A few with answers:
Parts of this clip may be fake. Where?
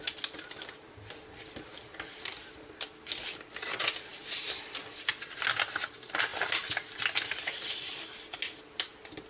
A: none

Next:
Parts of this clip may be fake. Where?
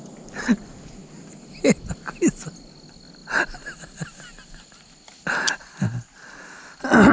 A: none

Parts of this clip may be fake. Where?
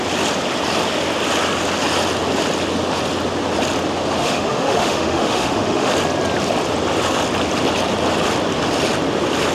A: 4.2-5.9 (autoencoder, DAC-VAE)